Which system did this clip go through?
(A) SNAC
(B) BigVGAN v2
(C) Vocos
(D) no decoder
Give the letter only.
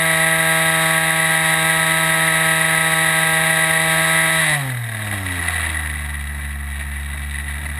D